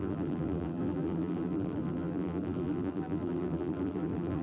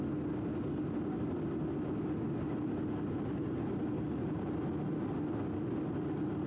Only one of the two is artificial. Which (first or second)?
first